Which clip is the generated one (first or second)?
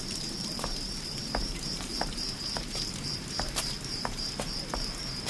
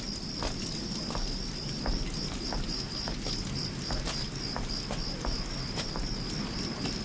first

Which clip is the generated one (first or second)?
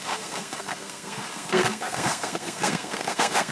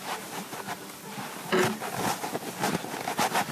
first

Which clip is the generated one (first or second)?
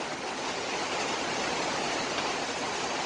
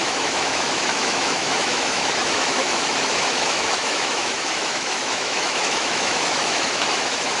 second